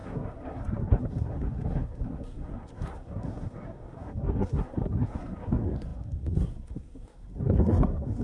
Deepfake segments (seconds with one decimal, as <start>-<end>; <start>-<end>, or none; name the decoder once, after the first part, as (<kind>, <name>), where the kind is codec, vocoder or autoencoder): 0.0-8.2 (codec, SNAC)